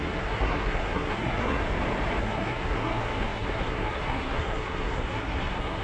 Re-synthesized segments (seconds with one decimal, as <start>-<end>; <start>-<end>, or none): 0.0-1.6; 2.2-5.8